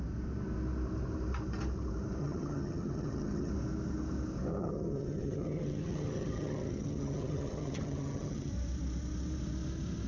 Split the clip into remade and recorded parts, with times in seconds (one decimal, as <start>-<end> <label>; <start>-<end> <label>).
0.0-2.2 recorded; 2.2-3.5 remade; 3.5-4.6 recorded; 4.6-8.5 remade; 8.5-10.1 recorded